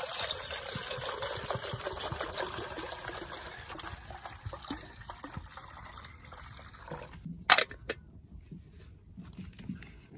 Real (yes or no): yes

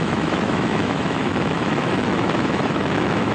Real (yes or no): no